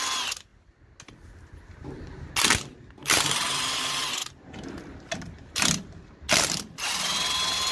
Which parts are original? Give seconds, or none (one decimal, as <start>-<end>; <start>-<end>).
0.0-3.0; 3.8-7.7